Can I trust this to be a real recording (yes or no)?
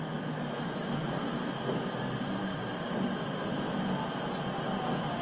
yes